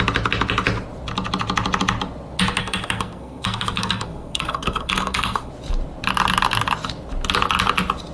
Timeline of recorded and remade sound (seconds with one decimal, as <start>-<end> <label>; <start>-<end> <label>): 0.0-2.6 recorded; 2.6-5.5 remade; 5.5-8.1 recorded